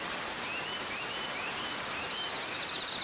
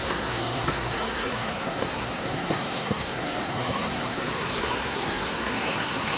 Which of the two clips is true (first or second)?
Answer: first